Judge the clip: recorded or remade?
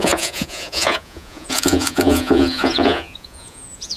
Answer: remade